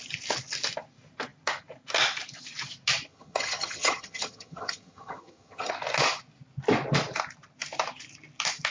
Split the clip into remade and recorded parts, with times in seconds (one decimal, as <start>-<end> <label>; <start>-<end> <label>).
0.0-3.1 recorded; 3.1-5.7 remade; 5.7-8.7 recorded